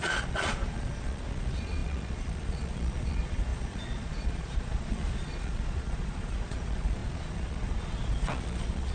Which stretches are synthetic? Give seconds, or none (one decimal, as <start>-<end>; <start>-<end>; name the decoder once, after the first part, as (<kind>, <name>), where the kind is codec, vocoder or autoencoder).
0.0-8.9 (vocoder, Vocos)